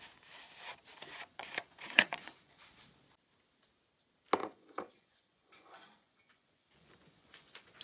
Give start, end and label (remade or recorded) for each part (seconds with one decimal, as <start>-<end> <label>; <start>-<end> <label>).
0.0-1.1 recorded; 1.1-2.6 remade; 2.6-4.4 recorded; 4.4-7.8 remade